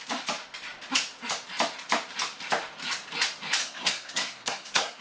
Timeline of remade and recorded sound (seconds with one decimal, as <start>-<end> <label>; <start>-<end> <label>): 0.0-3.6 recorded; 3.6-5.0 remade